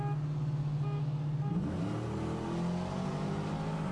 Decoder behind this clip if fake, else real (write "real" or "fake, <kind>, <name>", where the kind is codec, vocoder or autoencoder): real